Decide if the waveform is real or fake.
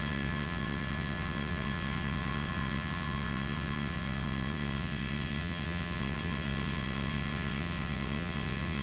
fake